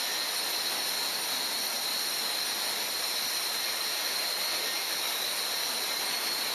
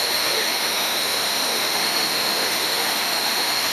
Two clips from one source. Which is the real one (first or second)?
first